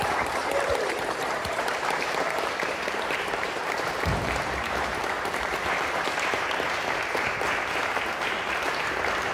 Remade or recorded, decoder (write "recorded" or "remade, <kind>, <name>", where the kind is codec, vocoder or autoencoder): remade, vocoder, BigVGAN v2